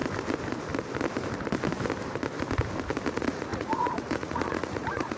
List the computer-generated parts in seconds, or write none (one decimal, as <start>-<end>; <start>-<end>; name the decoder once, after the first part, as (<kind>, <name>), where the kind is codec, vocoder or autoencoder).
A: 3.1-5.2 (vocoder, Vocos)